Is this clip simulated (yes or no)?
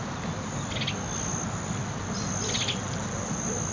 no